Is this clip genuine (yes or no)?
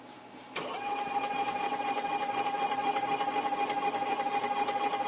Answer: no